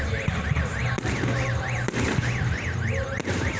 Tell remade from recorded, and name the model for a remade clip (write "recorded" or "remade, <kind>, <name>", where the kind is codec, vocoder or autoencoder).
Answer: recorded